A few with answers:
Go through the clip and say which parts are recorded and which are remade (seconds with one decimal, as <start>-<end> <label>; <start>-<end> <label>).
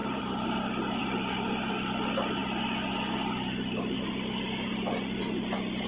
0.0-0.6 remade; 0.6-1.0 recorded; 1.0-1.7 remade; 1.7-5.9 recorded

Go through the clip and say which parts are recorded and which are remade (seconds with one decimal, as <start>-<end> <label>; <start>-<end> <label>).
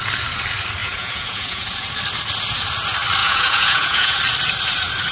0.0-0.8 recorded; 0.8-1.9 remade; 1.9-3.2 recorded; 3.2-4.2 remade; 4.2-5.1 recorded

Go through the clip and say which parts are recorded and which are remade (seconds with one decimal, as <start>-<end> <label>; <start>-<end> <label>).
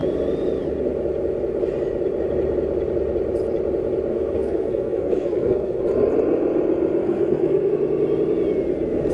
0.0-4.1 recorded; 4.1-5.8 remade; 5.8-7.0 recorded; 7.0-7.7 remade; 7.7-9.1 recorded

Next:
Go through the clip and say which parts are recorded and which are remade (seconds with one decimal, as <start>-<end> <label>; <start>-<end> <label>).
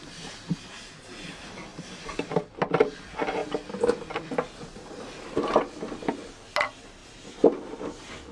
0.0-1.7 recorded; 1.7-2.4 remade; 2.4-8.3 recorded